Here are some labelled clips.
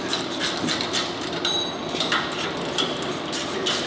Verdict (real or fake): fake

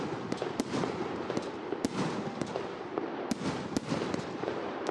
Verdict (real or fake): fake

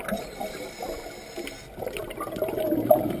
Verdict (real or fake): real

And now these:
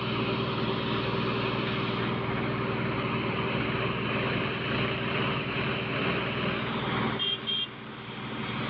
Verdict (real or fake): real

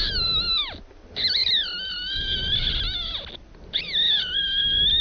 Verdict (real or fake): real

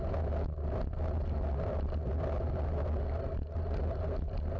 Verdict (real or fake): real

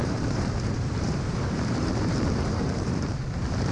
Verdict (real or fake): fake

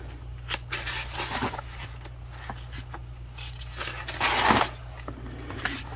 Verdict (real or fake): real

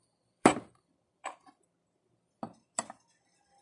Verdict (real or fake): fake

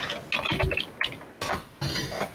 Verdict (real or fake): real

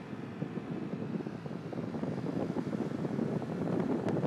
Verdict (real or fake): real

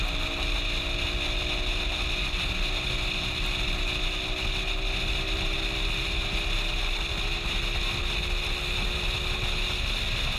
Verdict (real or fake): real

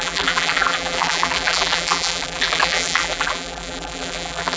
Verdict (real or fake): fake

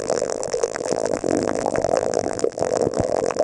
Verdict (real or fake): fake